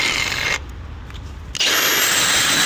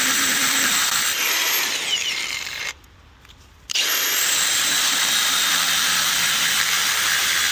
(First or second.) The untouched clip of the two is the first